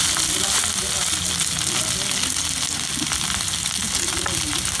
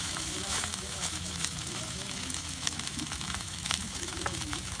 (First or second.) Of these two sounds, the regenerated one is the second